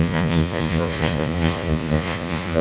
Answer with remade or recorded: remade